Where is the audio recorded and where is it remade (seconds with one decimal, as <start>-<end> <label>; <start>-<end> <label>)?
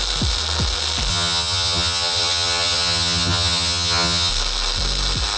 0.0-1.1 recorded; 1.1-4.3 remade; 4.3-5.4 recorded